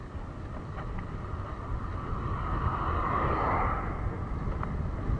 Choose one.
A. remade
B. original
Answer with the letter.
B